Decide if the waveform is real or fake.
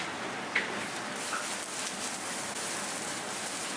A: real